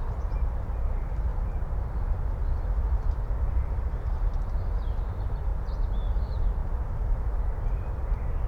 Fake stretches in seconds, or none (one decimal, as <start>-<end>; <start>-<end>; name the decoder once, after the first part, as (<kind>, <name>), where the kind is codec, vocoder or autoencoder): 0.0-5.5 (vocoder, BigVGAN v2); 6.1-8.5